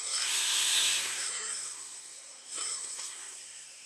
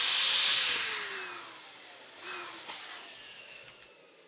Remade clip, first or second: first